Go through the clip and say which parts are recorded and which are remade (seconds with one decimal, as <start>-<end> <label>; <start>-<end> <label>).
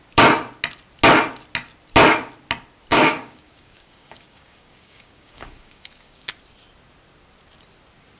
0.0-2.9 recorded; 2.9-6.3 remade; 6.3-8.2 recorded